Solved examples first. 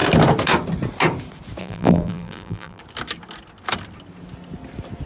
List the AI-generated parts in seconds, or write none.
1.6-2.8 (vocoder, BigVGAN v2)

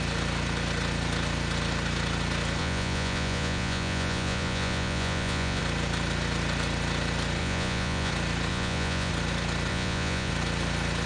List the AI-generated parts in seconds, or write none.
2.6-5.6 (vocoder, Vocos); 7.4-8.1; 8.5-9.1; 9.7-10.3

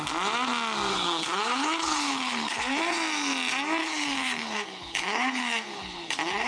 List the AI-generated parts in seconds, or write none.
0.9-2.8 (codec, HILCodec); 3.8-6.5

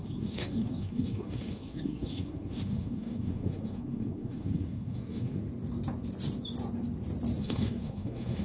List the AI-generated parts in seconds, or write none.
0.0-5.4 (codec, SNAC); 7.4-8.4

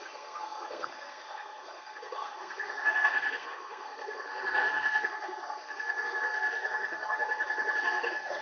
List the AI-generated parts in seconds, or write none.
0.0-7.2 (codec, SNAC); 7.8-8.4

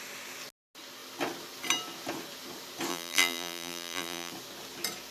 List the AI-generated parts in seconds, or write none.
2.9-4.3 (vocoder, BigVGAN v2)

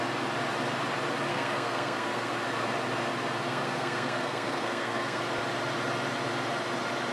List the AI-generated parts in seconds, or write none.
1.3-2.3 (codec, SNAC); 3.5-5.2

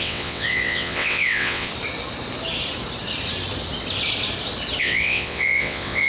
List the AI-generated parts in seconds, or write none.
0.0-1.7 (vocoder, WaveNeXt); 4.8-6.1